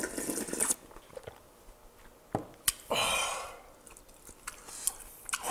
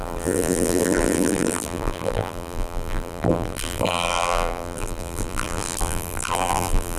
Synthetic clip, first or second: second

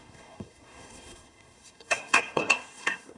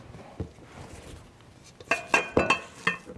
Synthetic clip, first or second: first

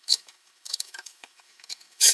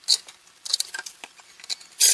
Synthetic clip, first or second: first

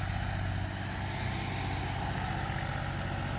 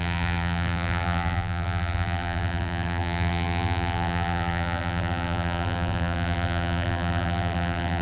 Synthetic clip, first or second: second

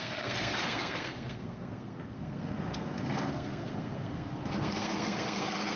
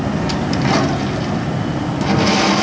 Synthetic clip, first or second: first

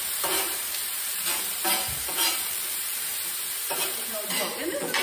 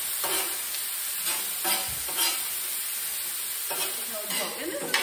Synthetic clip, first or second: first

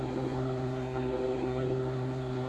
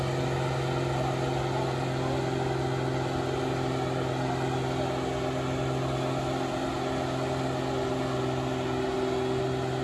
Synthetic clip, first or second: first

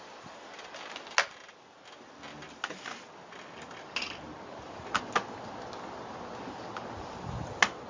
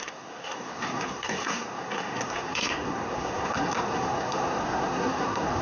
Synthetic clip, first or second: second